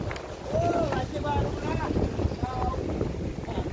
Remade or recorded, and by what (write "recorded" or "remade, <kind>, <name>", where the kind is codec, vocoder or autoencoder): recorded